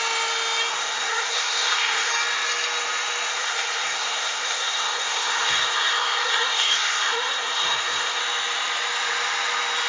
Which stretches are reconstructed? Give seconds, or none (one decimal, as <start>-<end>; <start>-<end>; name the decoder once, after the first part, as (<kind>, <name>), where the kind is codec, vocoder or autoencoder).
0.8-2.1 (codec, SNAC); 3.3-8.2